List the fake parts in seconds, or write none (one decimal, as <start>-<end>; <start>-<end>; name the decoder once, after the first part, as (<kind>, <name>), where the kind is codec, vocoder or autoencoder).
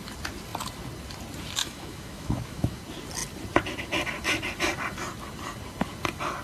1.6-2.8 (autoencoder, DAC-VAE)